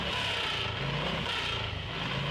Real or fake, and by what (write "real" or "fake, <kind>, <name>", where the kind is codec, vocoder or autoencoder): real